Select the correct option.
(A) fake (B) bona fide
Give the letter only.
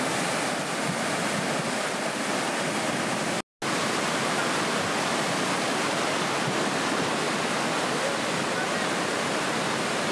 B